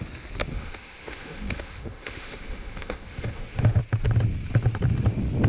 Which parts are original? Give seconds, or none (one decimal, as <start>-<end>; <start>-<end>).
0.0-0.5; 3.8-5.5